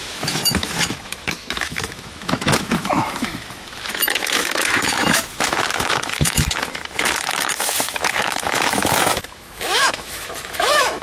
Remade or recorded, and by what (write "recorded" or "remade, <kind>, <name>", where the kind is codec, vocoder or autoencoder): remade, autoencoder, DAC-VAE